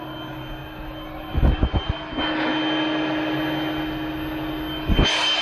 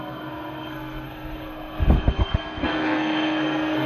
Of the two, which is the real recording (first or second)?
first